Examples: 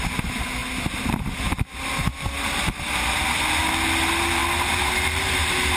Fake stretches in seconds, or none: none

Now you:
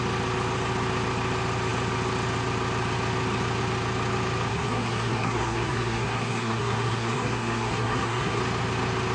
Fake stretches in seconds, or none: 4.5-8.4